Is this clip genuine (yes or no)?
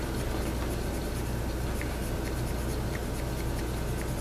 yes